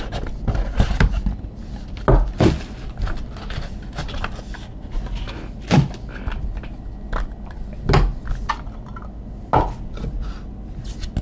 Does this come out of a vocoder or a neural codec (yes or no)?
no